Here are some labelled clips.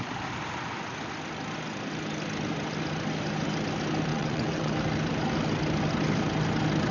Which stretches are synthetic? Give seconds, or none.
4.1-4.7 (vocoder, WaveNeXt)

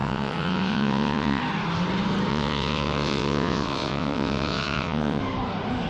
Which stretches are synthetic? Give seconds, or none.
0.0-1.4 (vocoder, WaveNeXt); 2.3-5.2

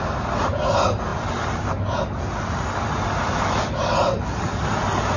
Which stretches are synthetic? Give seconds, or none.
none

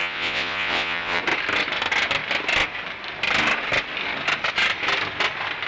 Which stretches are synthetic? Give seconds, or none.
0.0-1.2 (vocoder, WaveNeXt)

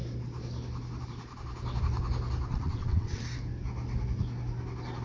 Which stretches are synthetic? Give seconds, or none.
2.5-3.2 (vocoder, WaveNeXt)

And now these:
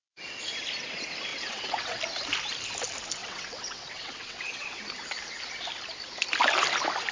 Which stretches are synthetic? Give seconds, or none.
1.3-2.0 (vocoder, WaveNeXt); 3.2-4.8